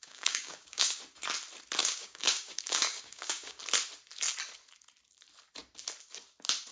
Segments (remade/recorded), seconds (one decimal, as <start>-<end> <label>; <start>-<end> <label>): 0.0-1.0 remade; 1.0-1.8 recorded; 1.8-3.6 remade; 3.6-6.7 recorded